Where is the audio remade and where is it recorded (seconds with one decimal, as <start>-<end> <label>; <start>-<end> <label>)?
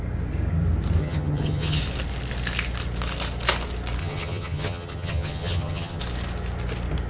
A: 0.0-1.0 recorded; 1.0-1.8 remade; 1.8-4.0 recorded; 4.0-6.0 remade; 6.0-7.1 recorded